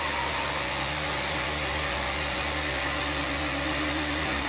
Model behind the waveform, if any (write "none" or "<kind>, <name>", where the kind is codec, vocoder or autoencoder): vocoder, Vocos